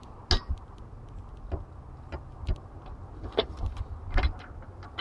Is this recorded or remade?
recorded